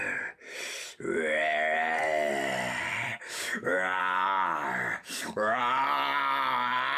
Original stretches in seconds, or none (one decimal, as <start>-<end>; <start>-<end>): 0.0-3.1; 4.0-5.0; 5.6-7.0